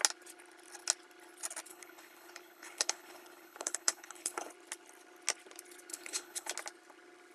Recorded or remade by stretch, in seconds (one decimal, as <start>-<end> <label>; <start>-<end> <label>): 0.0-1.7 recorded; 1.7-4.5 remade; 4.5-5.9 recorded; 5.9-6.5 remade; 6.5-7.3 recorded